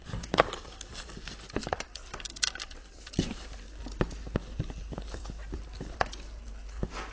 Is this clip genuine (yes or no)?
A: yes